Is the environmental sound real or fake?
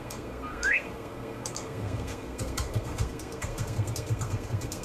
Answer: fake